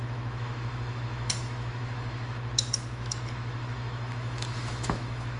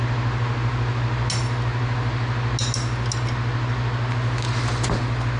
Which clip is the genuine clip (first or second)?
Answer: second